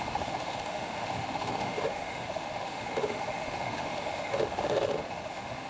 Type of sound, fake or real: fake